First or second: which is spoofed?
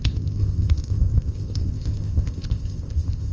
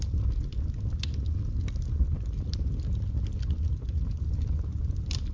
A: first